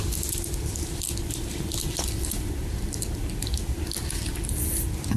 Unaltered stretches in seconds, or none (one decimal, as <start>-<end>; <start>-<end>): 0.0-5.2